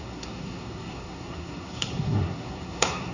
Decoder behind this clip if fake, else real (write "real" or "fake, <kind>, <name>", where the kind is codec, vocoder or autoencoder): fake, codec, SNAC